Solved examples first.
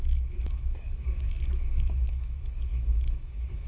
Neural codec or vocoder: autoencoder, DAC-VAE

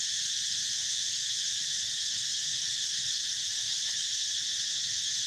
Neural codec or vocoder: autoencoder, DAC-VAE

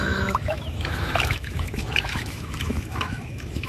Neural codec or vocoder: autoencoder, DAC-VAE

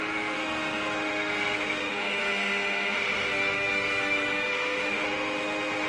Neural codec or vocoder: autoencoder, DAC-VAE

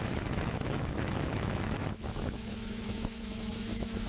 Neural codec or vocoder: autoencoder, DAC-VAE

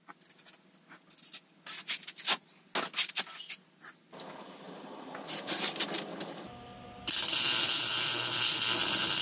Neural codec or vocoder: none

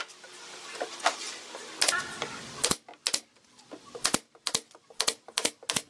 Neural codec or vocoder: none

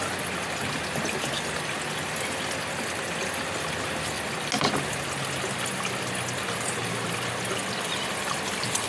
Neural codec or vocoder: none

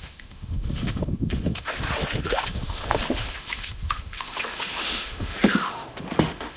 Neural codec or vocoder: autoencoder, DAC-VAE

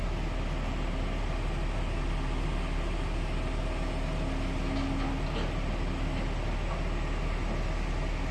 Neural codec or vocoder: none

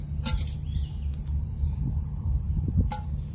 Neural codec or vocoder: none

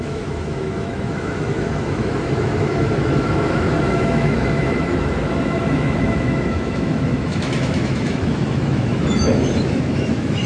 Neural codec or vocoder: autoencoder, DAC-VAE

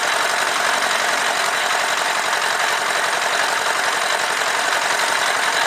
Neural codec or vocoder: none